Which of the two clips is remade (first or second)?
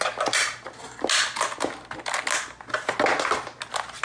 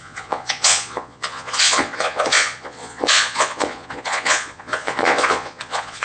second